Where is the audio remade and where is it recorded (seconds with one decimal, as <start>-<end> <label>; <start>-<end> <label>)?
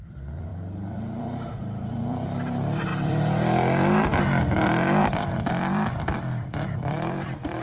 0.0-7.6 remade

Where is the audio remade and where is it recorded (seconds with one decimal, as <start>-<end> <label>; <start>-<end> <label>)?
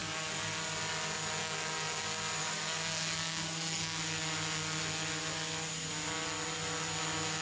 0.0-0.6 remade; 0.6-1.4 recorded; 1.4-2.0 remade; 2.0-2.4 recorded; 2.4-4.0 remade; 4.0-7.4 recorded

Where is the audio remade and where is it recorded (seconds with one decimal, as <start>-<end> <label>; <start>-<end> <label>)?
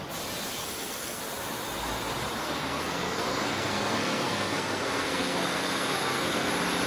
0.0-0.6 recorded; 0.6-1.2 remade; 1.2-2.4 recorded; 2.4-6.5 remade; 6.5-6.9 recorded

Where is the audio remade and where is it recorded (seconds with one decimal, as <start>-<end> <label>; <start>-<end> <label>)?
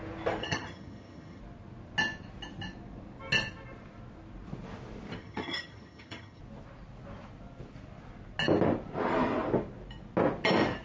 0.0-0.4 recorded; 0.4-1.4 remade; 1.4-5.2 recorded; 5.2-6.4 remade; 6.4-10.8 recorded